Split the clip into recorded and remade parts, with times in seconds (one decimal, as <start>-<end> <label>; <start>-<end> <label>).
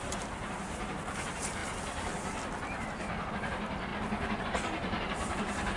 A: 0.0-1.6 remade; 1.6-3.3 recorded; 3.3-3.9 remade; 3.9-4.4 recorded; 4.4-5.8 remade